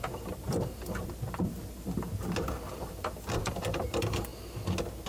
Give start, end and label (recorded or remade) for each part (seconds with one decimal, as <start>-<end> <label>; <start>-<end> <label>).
0.0-2.1 remade; 2.1-2.8 recorded; 2.8-4.3 remade; 4.3-5.1 recorded